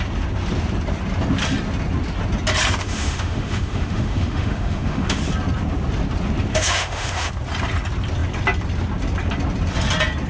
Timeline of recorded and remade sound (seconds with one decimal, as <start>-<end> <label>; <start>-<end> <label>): 0.0-2.8 recorded; 2.8-5.2 remade; 5.2-6.5 recorded; 6.5-7.3 remade; 7.3-10.3 recorded